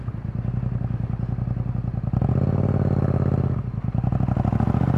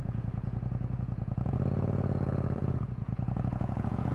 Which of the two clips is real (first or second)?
first